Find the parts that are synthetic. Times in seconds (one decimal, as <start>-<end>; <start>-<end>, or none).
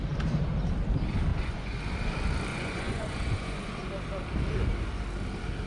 1.3-1.8; 2.5-3.9